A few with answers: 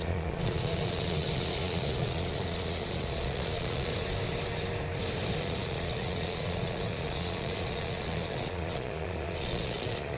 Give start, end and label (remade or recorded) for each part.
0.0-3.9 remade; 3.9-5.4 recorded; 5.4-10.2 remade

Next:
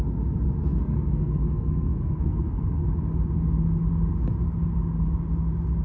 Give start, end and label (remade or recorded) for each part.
0.0-0.7 recorded; 0.7-2.8 remade; 2.8-5.8 recorded

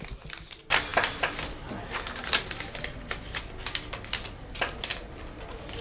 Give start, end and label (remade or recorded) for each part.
0.0-5.8 recorded

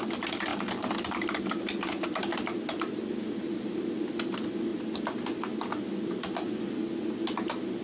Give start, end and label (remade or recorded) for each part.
0.0-7.8 recorded